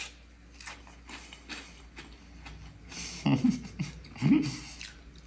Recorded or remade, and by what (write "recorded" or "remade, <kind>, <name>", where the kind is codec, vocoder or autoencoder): recorded